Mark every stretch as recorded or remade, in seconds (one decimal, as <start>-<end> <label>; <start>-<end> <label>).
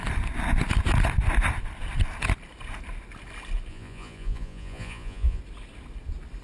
0.0-3.7 recorded; 3.7-5.4 remade; 5.4-6.4 recorded